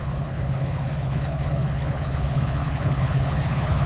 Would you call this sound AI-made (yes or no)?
yes